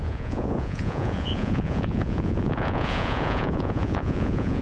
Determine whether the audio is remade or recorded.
remade